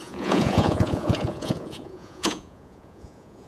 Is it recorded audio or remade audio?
remade